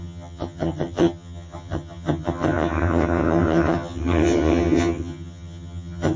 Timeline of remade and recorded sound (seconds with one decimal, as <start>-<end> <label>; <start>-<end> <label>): 0.0-6.2 remade